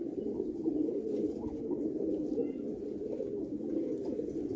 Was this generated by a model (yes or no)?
no